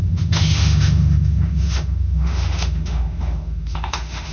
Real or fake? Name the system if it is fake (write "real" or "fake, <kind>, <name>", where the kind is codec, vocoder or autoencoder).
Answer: fake, autoencoder, DAC-VAE